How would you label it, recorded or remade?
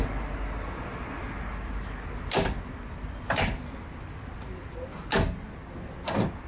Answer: recorded